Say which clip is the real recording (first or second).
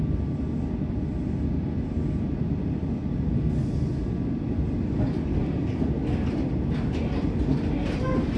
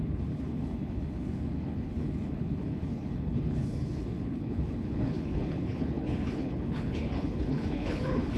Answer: first